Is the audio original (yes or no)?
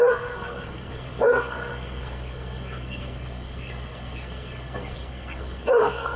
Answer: no